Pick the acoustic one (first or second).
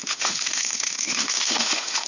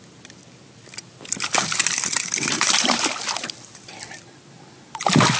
second